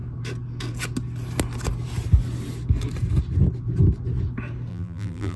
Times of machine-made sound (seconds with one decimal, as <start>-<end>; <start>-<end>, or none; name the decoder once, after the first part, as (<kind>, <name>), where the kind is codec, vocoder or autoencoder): 4.7-5.4 (vocoder, BigVGAN v2)